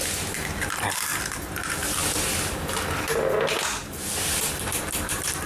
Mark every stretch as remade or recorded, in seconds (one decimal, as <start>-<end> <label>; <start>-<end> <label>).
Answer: 0.0-3.8 recorded; 3.8-4.5 remade; 4.5-5.5 recorded